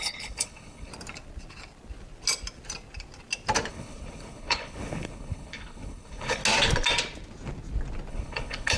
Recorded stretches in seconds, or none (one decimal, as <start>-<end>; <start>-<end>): 0.9-3.7; 6.4-8.1